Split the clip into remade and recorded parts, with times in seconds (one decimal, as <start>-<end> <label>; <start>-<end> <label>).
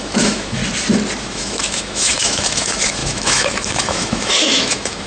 0.0-0.6 remade; 0.6-1.2 recorded; 1.2-5.1 remade